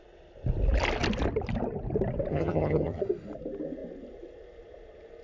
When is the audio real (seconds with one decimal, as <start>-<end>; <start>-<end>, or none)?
0.0-2.3; 3.0-5.2